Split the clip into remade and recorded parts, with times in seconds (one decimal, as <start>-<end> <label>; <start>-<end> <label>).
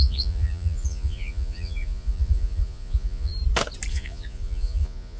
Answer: 0.0-3.3 remade; 3.3-3.9 recorded; 3.9-5.2 remade